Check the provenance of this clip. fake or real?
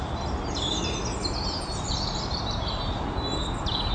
real